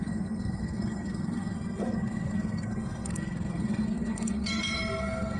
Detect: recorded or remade remade